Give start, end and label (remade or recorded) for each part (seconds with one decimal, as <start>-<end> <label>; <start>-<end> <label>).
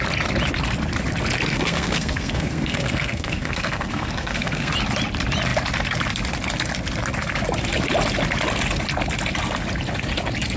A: 0.0-1.5 recorded; 1.5-4.7 remade; 4.7-10.6 recorded